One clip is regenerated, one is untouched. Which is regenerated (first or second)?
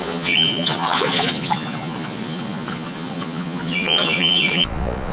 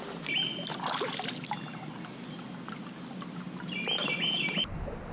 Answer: first